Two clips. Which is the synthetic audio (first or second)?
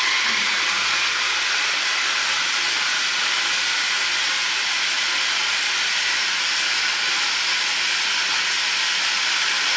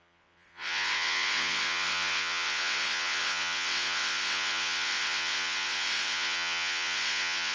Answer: second